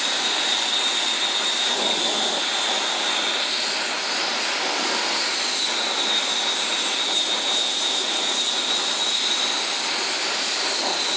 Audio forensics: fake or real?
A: real